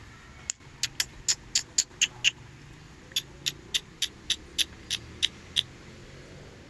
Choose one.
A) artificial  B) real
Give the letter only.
B